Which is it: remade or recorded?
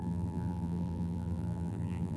remade